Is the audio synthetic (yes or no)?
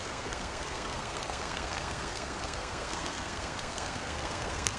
yes